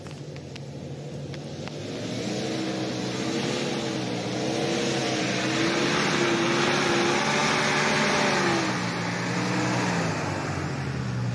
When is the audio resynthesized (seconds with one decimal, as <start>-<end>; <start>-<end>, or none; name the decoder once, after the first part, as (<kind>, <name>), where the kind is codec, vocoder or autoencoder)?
none